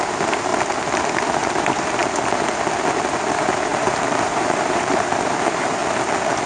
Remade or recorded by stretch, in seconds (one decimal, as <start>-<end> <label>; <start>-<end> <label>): 0.0-0.5 remade; 0.5-1.1 recorded; 1.1-2.0 remade; 2.0-3.3 recorded; 3.3-5.8 remade; 5.8-6.5 recorded